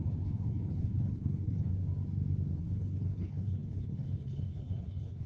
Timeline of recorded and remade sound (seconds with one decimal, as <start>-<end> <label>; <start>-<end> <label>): 0.0-1.7 remade; 1.7-2.6 recorded; 2.6-5.3 remade